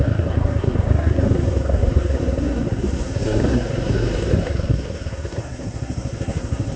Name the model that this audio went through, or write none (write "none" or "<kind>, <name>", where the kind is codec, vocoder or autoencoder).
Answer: codec, SNAC